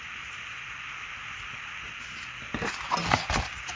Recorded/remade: recorded